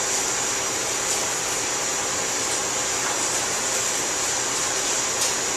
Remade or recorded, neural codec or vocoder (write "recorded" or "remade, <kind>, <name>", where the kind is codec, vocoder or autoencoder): recorded